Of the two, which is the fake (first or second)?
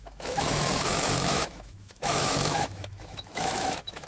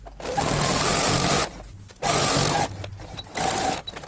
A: first